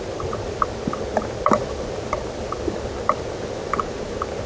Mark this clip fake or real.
real